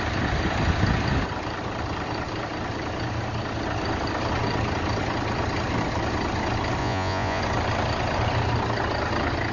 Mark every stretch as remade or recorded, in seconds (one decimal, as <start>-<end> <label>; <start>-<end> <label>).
0.0-6.8 recorded; 6.8-7.4 remade; 7.4-9.5 recorded